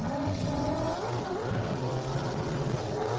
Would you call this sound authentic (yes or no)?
no